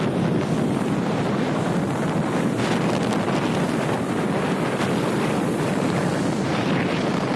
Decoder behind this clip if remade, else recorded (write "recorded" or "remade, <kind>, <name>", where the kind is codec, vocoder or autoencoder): recorded